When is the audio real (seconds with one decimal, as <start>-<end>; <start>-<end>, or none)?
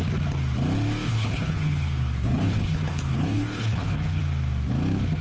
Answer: 0.0-1.1; 4.2-5.2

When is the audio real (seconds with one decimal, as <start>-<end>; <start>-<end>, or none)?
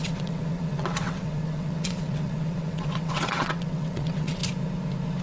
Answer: 4.4-5.2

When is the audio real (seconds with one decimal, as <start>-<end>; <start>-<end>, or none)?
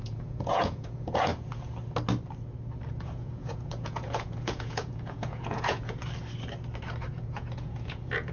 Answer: 1.3-2.9; 6.0-7.1